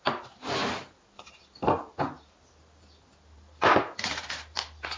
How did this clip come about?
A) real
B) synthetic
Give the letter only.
A